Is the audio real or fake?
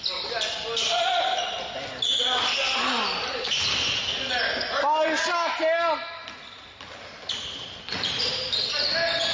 real